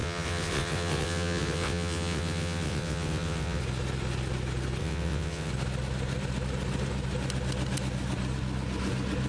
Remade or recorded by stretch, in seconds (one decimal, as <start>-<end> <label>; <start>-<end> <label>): 0.0-3.6 remade; 3.6-4.8 recorded; 4.8-5.5 remade; 5.5-9.3 recorded